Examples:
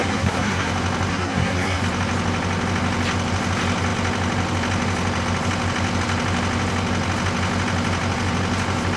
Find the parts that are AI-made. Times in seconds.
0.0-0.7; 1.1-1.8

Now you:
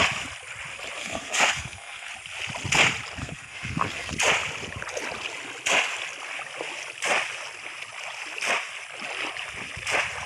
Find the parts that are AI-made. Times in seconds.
1.0-2.1; 3.2-4.1

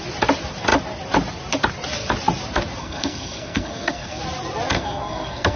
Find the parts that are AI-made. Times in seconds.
2.8-4.2; 4.7-5.6

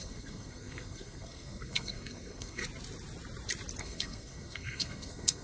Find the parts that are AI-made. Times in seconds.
0.0-2.6; 3.8-5.4